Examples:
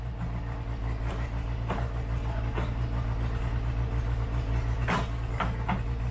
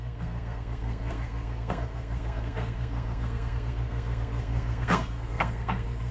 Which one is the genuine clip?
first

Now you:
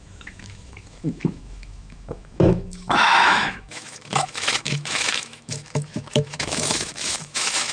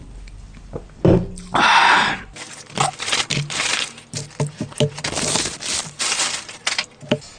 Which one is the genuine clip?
second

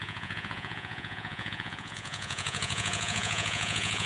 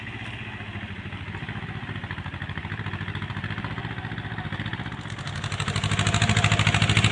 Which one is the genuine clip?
second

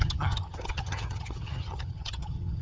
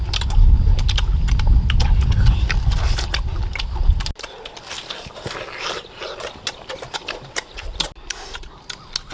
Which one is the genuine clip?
second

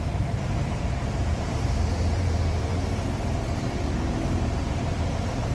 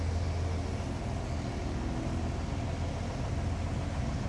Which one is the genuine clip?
second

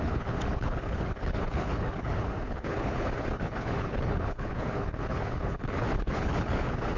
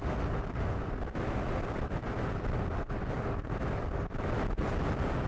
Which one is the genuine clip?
second